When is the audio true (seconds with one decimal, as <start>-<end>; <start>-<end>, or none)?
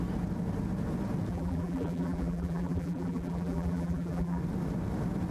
0.0-1.3; 4.4-5.3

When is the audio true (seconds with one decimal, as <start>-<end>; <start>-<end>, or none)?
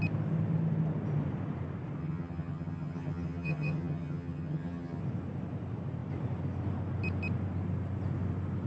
0.0-2.0; 5.0-8.7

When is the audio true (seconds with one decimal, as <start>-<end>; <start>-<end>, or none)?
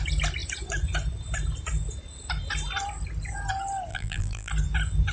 0.0-3.9; 4.5-5.1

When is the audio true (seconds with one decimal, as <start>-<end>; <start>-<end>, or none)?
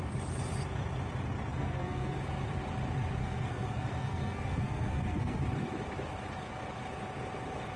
0.0-1.5; 2.2-3.2; 5.4-7.8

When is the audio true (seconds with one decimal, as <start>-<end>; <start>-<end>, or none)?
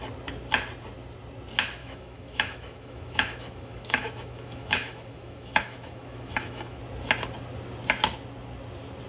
0.0-1.8; 6.8-9.1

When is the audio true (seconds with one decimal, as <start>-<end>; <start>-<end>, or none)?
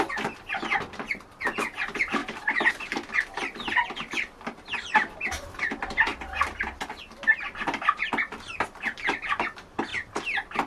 0.0-2.2; 5.2-9.9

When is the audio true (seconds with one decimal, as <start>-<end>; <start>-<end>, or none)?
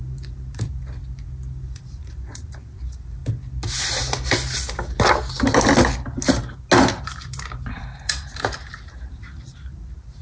0.7-2.0; 3.2-7.0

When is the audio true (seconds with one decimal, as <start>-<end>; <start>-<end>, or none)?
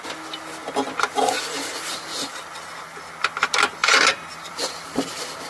0.0-3.8; 5.0-5.5